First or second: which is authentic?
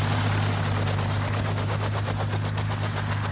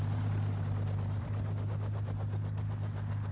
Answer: first